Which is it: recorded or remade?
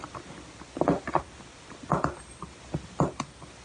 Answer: recorded